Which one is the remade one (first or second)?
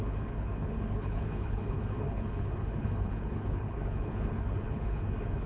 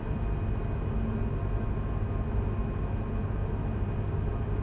first